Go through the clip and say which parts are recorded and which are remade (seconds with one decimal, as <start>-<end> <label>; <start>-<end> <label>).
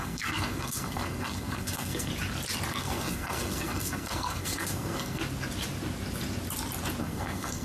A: 0.0-2.1 remade; 2.1-2.7 recorded; 2.7-5.2 remade; 5.2-7.0 recorded; 7.0-7.6 remade